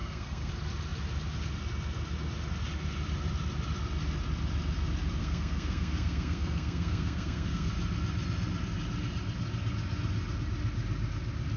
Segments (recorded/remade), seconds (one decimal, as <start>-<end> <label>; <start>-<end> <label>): 0.0-0.5 remade; 0.5-5.2 recorded; 5.2-7.7 remade; 7.7-11.6 recorded